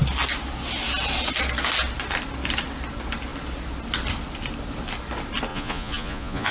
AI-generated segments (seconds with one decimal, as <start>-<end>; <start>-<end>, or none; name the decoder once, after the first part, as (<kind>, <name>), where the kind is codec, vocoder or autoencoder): 5.5-6.5 (vocoder, Vocos)